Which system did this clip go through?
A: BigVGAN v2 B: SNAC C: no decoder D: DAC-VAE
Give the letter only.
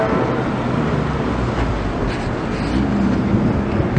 C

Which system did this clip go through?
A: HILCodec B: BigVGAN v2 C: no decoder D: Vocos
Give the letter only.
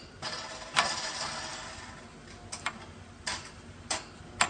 B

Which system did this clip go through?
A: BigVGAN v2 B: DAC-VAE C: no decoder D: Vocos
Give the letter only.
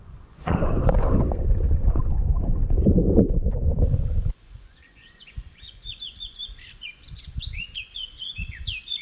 D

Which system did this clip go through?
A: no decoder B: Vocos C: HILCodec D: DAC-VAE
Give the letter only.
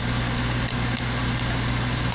A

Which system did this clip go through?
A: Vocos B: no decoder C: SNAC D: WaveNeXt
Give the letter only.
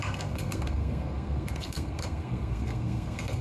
C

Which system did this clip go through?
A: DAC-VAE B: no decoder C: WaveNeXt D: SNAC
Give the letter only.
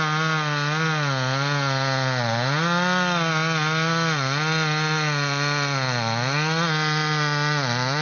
B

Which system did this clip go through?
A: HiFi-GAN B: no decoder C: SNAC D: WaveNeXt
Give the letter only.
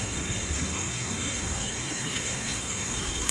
C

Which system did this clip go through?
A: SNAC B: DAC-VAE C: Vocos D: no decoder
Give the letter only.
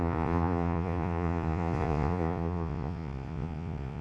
C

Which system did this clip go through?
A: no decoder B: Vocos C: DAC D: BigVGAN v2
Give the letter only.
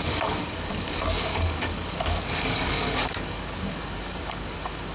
C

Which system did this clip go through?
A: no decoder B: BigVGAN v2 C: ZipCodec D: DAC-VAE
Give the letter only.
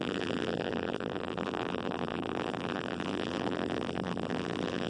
B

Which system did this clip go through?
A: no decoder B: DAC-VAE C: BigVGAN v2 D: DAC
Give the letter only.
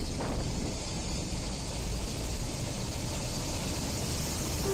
C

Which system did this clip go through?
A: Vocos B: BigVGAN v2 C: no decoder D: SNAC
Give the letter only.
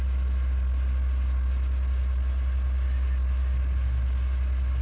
C